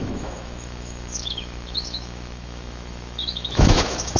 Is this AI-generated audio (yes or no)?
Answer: yes